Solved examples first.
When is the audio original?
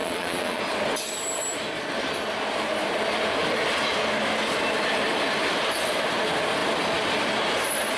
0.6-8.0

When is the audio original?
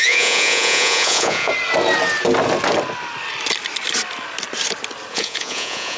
1.5-5.1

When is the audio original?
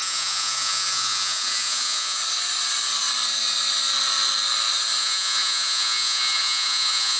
2.2-5.0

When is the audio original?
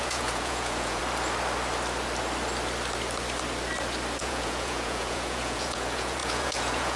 1.0-4.2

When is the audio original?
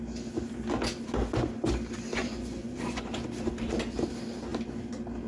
0.0-2.2; 3.0-5.3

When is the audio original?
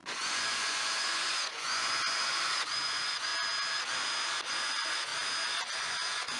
3.3-4.5; 5.1-5.8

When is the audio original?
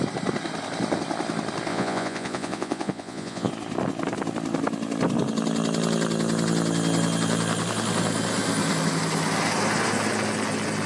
0.0-1.7; 3.5-10.9